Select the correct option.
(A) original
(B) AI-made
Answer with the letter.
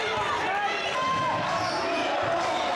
A